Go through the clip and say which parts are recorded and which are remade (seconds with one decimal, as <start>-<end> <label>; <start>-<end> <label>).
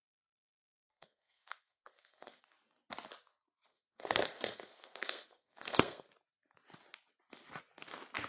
0.0-0.8 recorded; 0.8-2.4 remade; 2.4-3.7 recorded; 3.7-6.1 remade; 6.1-8.3 recorded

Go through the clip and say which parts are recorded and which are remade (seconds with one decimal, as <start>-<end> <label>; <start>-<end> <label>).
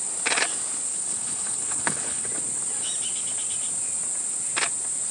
0.0-0.9 recorded; 0.9-2.3 remade; 2.3-5.1 recorded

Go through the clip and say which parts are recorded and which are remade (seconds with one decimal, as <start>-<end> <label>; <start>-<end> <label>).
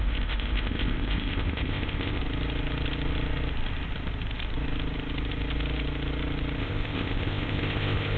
0.0-2.2 remade; 2.2-6.6 recorded; 6.6-8.2 remade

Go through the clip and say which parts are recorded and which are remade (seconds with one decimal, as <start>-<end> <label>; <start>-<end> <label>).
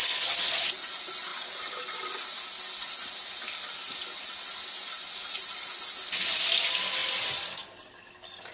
0.0-1.3 recorded; 1.3-2.0 remade; 2.0-7.0 recorded; 7.0-8.1 remade; 8.1-8.5 recorded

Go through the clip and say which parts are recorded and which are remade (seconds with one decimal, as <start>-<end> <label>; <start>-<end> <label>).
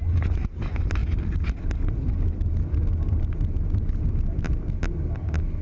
0.0-5.6 recorded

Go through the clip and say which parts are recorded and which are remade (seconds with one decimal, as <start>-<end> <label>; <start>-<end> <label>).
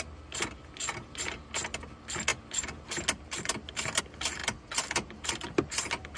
0.0-6.2 recorded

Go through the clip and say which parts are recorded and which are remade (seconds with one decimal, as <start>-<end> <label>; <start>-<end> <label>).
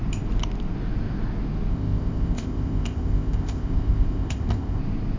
0.0-1.7 recorded; 1.7-4.8 remade; 4.8-5.2 recorded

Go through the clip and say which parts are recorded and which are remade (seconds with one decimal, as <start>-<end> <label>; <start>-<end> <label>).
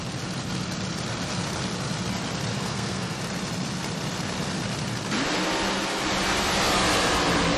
0.0-2.5 recorded; 2.5-3.2 remade; 3.2-7.6 recorded